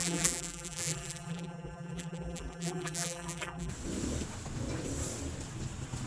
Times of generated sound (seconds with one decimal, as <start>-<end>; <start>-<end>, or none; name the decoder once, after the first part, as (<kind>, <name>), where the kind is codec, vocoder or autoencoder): 0.0-3.7 (vocoder, BigVGAN v2)